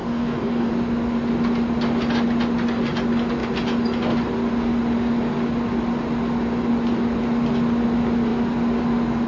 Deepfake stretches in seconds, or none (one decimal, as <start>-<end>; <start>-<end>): 0.0-0.7